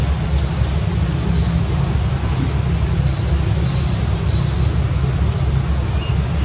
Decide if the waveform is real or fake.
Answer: real